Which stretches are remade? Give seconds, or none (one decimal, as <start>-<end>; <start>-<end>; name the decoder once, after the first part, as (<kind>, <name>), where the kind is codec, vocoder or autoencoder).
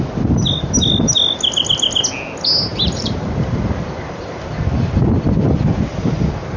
2.7-6.6 (vocoder, BigVGAN v2)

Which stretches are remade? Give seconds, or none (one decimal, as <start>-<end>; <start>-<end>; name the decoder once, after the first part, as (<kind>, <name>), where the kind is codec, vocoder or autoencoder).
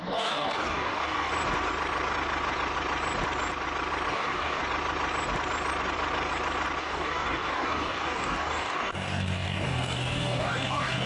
0.0-1.3 (codec, DAC); 4.1-4.6; 6.8-11.1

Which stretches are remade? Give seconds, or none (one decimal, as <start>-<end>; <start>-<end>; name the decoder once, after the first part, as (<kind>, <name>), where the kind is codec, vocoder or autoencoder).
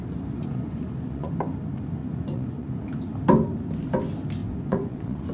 0.0-1.3 (vocoder, Vocos); 2.0-2.8; 4.4-5.3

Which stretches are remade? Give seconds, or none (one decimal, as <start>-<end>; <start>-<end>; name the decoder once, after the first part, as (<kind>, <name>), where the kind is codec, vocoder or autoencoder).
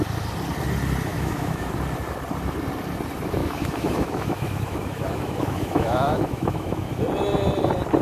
1.1-1.7 (autoencoder, DAC-VAE); 3.4-7.0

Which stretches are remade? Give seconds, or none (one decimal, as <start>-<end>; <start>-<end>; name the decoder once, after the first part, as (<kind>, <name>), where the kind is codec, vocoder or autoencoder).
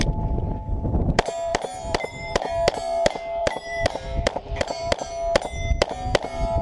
1.5-2.5 (vocoder, BigVGAN v2); 3.4-5.1